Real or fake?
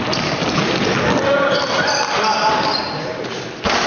real